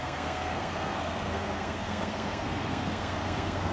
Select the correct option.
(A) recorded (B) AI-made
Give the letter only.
B